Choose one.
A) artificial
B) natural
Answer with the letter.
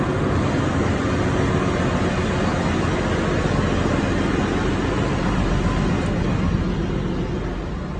B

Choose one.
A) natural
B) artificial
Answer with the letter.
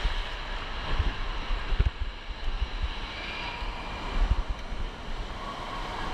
A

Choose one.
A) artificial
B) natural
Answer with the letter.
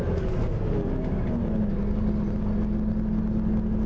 B